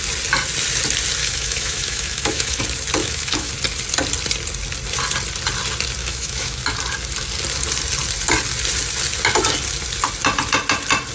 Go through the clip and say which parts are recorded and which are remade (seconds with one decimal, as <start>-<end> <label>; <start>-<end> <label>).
0.0-1.2 recorded; 1.2-2.6 remade; 2.6-3.0 recorded; 3.0-3.5 remade; 3.5-6.0 recorded; 6.0-6.6 remade; 6.6-11.1 recorded